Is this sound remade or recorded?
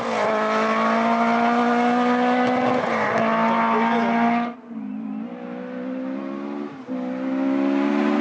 recorded